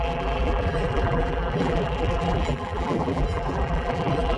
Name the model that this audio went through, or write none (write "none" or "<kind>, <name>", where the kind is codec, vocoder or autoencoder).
vocoder, BigVGAN v2